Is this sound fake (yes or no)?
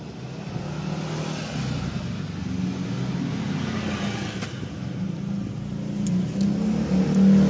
no